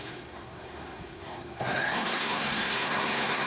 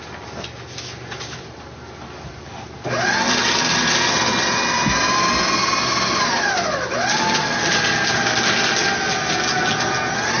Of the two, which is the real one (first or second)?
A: second